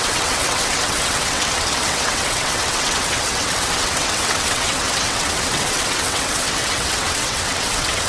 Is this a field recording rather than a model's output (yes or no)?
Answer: no